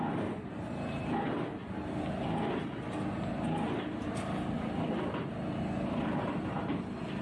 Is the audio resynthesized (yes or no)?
no